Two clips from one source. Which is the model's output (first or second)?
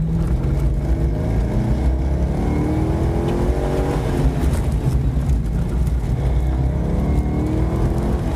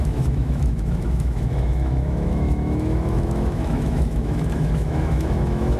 second